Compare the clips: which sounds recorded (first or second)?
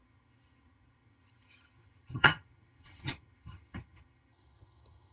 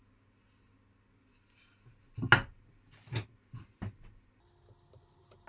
second